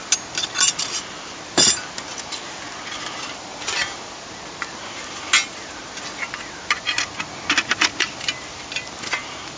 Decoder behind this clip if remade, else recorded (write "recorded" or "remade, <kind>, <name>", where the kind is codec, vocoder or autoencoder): recorded